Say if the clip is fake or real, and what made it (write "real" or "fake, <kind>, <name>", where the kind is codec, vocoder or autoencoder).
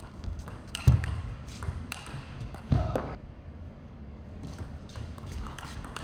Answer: fake, codec, DAC